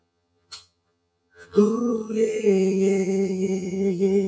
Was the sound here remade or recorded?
remade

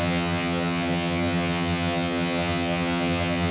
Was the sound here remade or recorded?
remade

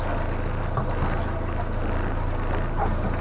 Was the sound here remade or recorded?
recorded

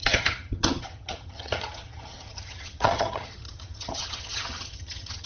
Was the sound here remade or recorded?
remade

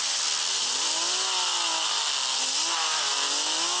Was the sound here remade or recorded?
recorded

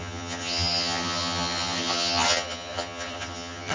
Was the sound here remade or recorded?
remade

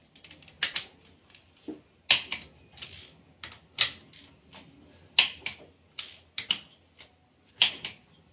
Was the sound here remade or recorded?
recorded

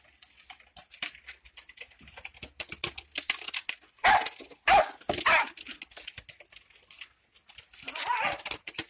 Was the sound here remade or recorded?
recorded